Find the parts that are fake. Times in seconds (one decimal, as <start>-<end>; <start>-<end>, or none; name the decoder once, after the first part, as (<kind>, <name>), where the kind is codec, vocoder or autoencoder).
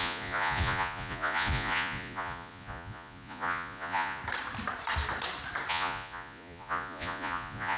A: 0.0-4.2 (vocoder, Vocos); 5.7-7.8